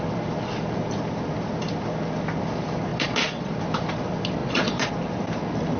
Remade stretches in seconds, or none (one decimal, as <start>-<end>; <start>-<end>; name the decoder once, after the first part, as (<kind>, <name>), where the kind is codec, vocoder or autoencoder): 2.9-3.6 (vocoder, Vocos); 4.4-4.9